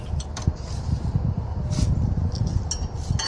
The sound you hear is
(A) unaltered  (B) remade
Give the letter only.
A